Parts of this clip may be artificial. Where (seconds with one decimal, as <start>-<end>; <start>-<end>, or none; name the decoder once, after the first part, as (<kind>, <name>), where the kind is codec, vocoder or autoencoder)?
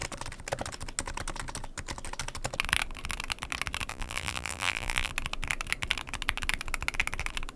3.9-5.1 (vocoder, BigVGAN v2)